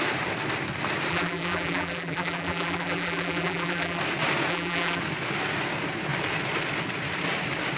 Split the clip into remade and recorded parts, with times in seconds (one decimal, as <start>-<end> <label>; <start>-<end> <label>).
0.0-1.1 recorded; 1.1-4.0 remade; 4.0-4.5 recorded; 4.5-5.0 remade; 5.0-7.8 recorded